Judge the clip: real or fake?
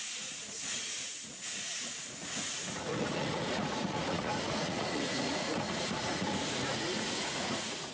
fake